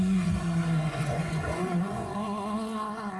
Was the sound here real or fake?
fake